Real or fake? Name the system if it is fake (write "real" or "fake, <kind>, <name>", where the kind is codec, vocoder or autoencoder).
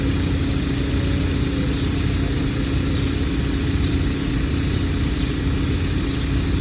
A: real